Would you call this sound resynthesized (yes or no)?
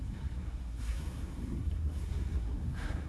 yes